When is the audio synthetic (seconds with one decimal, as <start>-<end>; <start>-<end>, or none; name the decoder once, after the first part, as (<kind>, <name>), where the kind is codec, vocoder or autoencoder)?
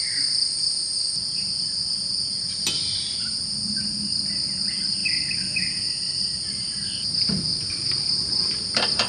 none